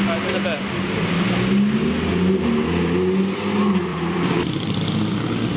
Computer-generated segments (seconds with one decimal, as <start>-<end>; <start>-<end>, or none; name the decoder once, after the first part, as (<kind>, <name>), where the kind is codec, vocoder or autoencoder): 3.9-4.8 (vocoder, BigVGAN v2)